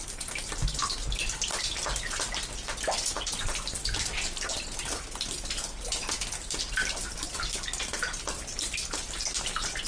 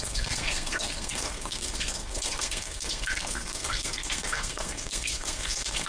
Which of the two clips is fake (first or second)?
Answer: second